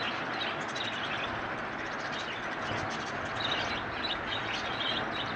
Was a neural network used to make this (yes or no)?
no